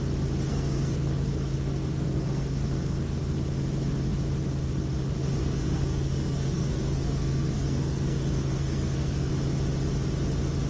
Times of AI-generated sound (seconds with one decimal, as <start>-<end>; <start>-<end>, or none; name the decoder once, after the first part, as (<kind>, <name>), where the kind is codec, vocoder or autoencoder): 0.5-3.2 (codec, SNAC); 5.4-9.3